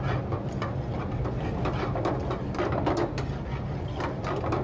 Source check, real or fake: real